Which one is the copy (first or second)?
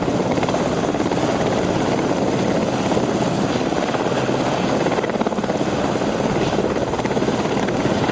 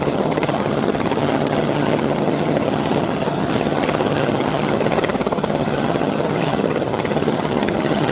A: second